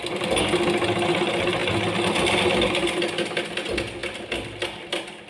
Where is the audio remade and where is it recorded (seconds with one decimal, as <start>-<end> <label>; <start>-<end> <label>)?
0.0-5.3 recorded